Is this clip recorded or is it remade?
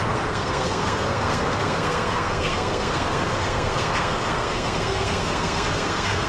remade